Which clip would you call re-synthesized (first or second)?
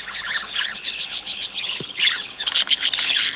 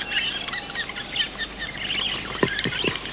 first